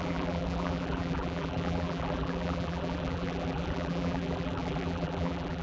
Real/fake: fake